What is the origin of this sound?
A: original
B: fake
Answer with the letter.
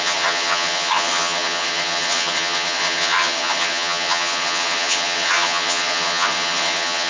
B